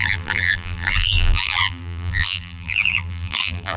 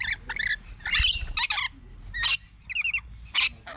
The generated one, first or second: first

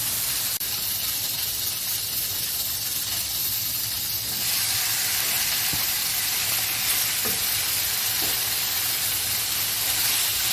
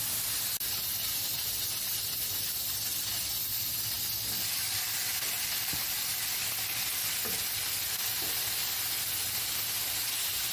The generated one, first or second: first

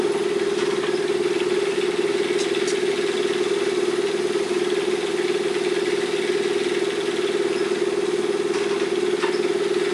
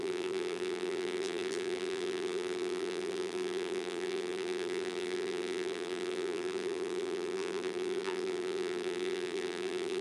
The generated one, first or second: second